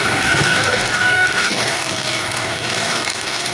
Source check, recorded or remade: remade